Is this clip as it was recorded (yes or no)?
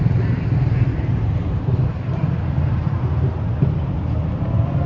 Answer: yes